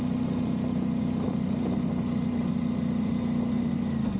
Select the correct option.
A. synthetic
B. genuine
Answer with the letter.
B